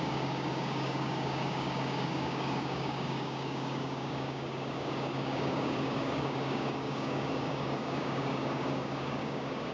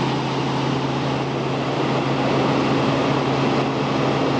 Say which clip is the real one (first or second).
second